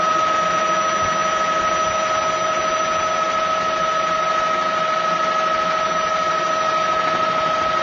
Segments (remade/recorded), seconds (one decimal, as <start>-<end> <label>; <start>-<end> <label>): 0.0-7.8 recorded